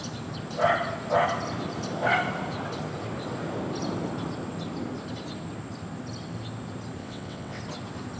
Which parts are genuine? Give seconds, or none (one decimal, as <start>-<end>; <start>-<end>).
0.0-7.0; 7.6-8.2